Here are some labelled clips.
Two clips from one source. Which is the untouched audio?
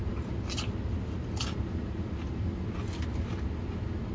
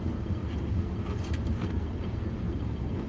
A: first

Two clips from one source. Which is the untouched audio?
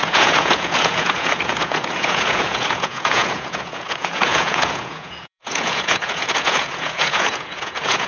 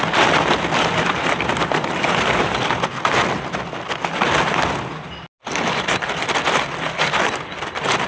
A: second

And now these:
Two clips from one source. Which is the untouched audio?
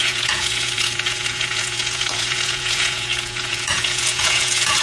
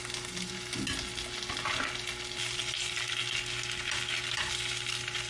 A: second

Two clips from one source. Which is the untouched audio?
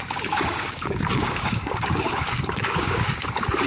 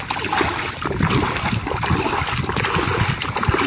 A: second